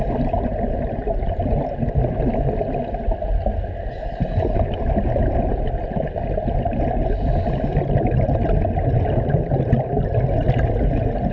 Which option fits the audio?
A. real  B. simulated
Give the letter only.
A